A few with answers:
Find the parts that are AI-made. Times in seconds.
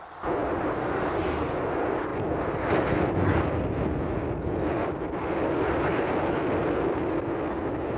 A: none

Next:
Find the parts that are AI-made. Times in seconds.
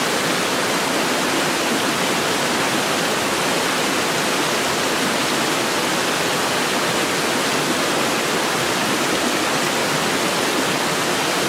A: 8.8-9.4 (vocoder, BigVGAN v2)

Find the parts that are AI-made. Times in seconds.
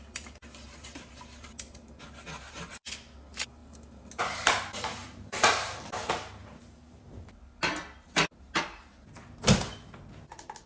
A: 3.6-5.8 (vocoder, BigVGAN v2); 6.4-7.3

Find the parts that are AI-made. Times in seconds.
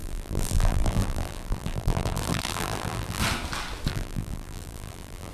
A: 0.0-3.2 (vocoder, BigVGAN v2); 3.9-5.3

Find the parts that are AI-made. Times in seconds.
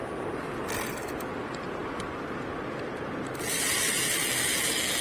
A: none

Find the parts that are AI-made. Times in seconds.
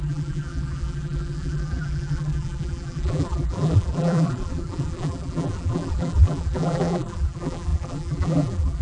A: 0.0-8.8 (vocoder, BigVGAN v2)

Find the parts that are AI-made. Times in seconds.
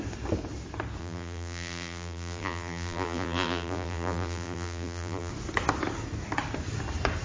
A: 1.0-5.3 (vocoder, BigVGAN v2)